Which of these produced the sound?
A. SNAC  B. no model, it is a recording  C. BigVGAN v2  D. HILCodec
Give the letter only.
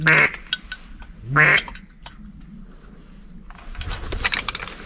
B